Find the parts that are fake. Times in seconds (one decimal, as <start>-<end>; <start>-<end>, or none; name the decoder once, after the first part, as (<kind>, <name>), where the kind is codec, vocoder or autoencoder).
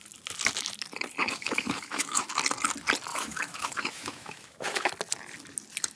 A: 1.2-2.3 (autoencoder, DAC-VAE); 3.1-4.9